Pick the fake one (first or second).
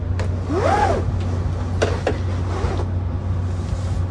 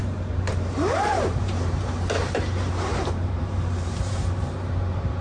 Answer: second